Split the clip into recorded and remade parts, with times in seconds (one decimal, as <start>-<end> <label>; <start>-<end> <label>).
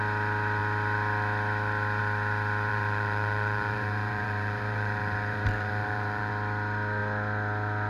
0.0-2.7 recorded; 2.7-6.3 remade; 6.3-7.9 recorded